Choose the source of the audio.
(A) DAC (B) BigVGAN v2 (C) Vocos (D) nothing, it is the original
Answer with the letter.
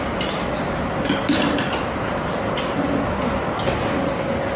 D